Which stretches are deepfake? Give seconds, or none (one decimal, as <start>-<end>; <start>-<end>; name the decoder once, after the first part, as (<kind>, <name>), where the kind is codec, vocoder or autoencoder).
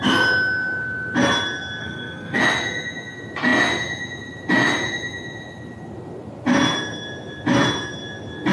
1.8-2.4 (codec, SNAC)